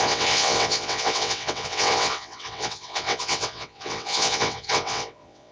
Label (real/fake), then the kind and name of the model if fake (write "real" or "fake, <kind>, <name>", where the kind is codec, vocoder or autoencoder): fake, vocoder, WaveNeXt